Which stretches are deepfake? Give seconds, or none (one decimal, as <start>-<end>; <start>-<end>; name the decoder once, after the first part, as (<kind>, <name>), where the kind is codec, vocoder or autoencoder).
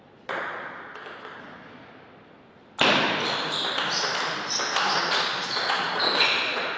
0.0-0.9 (vocoder, Vocos); 1.4-1.8; 4.9-6.8